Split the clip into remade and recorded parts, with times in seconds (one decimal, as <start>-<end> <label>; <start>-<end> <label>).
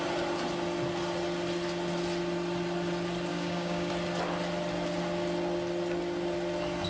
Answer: 0.0-3.3 recorded; 3.3-3.9 remade; 3.9-6.9 recorded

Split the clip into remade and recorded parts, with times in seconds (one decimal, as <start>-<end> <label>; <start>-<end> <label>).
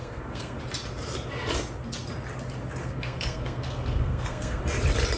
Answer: 0.0-0.6 remade; 0.6-2.8 recorded; 2.8-4.6 remade; 4.6-5.2 recorded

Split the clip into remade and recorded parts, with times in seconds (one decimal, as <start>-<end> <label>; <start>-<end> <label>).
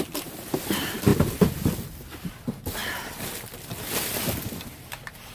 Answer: 0.0-5.3 recorded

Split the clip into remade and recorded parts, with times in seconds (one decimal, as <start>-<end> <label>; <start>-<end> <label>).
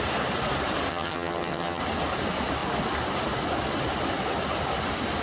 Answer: 0.0-0.9 recorded; 0.9-1.8 remade; 1.8-5.2 recorded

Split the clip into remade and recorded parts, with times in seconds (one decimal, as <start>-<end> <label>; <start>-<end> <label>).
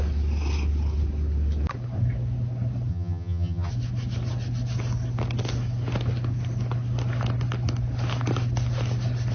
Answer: 0.0-2.9 recorded; 2.9-3.7 remade; 3.7-9.3 recorded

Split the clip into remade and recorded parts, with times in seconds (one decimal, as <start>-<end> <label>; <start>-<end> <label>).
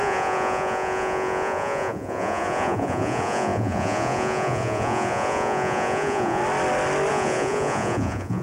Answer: 0.0-6.4 remade; 6.4-7.1 recorded; 7.1-8.4 remade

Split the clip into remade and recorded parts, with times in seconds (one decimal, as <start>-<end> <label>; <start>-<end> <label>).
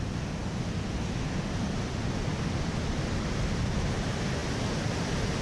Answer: 0.0-5.4 recorded